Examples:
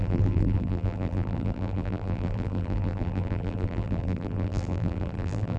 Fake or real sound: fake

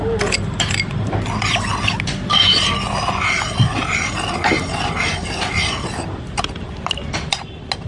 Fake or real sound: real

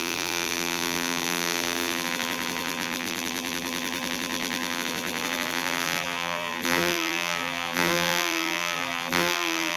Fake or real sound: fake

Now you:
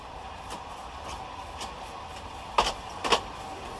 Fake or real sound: real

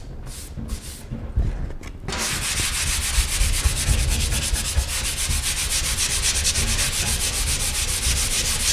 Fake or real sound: real